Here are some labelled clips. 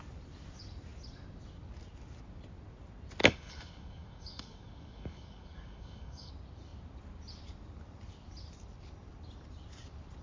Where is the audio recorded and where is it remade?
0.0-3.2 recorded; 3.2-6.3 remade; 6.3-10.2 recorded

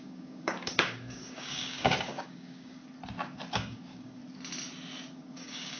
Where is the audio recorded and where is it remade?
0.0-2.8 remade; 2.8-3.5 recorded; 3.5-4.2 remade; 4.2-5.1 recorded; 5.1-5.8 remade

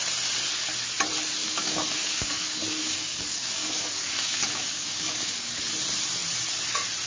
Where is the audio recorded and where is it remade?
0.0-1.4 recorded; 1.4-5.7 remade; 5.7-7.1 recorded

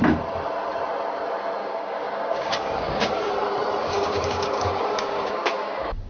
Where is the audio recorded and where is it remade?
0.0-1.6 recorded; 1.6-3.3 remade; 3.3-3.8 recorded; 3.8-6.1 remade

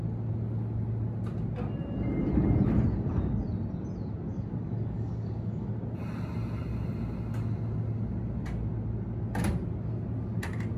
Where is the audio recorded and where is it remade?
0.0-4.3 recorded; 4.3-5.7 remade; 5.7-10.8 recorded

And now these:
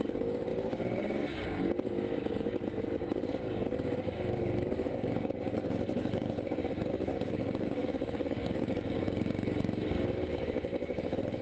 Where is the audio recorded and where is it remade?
0.0-11.4 remade

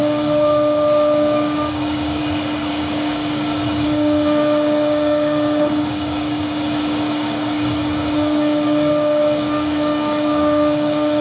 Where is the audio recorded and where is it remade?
0.0-2.2 remade; 2.2-2.7 recorded; 2.7-11.2 remade

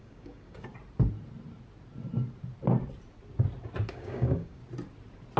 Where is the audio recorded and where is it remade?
0.0-0.7 remade; 0.7-3.9 recorded; 3.9-4.6 remade; 4.6-5.4 recorded